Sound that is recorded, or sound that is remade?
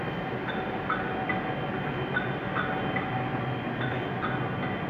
recorded